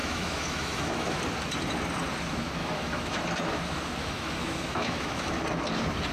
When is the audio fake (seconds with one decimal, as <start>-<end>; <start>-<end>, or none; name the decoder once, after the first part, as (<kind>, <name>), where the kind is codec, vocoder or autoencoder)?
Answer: 0.0-1.2 (autoencoder, DAC-VAE); 2.6-3.2; 4.0-5.3